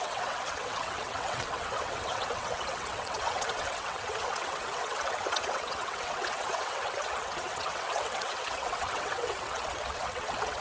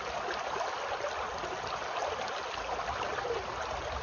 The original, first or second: second